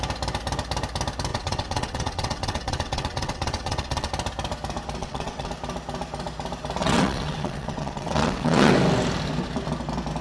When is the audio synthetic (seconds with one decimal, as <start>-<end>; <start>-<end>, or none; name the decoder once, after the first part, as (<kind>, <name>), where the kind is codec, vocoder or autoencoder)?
1.3-4.1 (vocoder, WaveNeXt); 5.0-5.5; 6.8-8.7